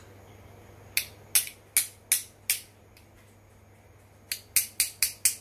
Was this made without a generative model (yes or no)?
yes